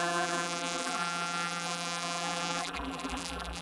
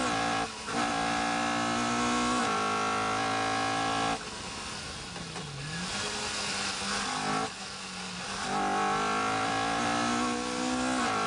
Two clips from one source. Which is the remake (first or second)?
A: first